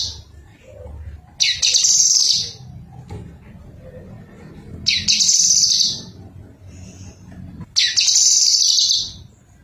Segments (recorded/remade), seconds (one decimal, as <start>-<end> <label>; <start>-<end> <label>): 0.0-8.8 recorded; 8.8-9.6 remade